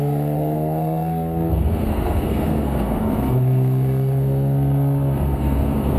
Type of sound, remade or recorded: remade